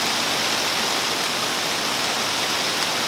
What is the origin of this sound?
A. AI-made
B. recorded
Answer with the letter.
B